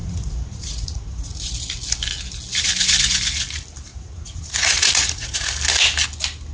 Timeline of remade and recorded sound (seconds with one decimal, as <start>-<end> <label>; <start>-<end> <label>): 0.0-1.5 remade; 1.5-3.9 recorded; 3.9-5.5 remade; 5.5-6.5 recorded